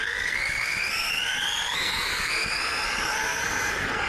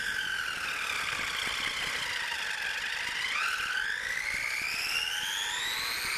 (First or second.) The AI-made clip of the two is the first